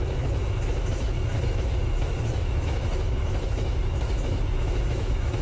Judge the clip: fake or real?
fake